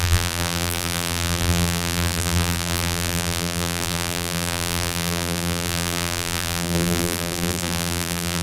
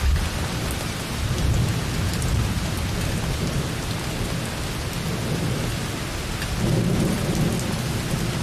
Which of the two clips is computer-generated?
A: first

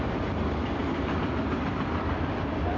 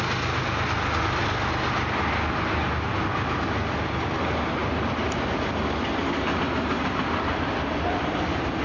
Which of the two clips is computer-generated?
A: first